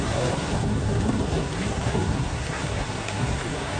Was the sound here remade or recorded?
remade